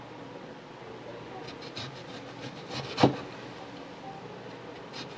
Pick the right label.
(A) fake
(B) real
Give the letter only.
B